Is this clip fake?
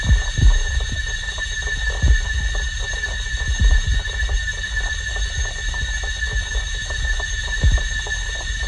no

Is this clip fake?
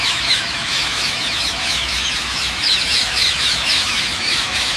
yes